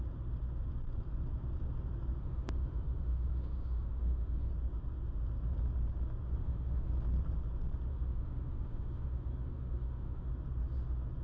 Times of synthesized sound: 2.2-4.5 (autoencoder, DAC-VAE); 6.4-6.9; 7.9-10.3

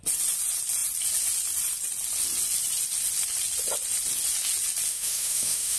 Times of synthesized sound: 4.9-5.8 (autoencoder, DAC-VAE)

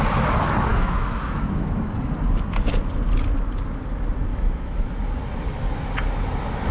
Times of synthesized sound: 0.7-2.1 (autoencoder, DAC-VAE); 4.3-4.9

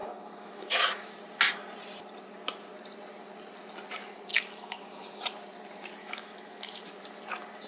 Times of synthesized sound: 0.0-1.1 (autoencoder, DAC-VAE); 4.3-5.2; 6.0-6.8

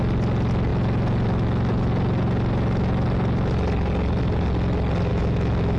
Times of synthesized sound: 5.1-5.8 (autoencoder, DAC-VAE)

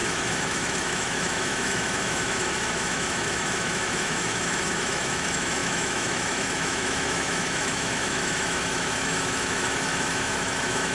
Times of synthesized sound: 0.0-10.9 (autoencoder, DAC-VAE)